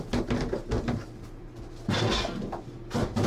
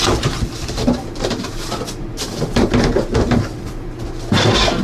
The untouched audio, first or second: first